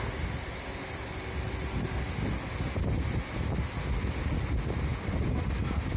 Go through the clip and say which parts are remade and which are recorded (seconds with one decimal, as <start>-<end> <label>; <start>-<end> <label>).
0.0-6.0 recorded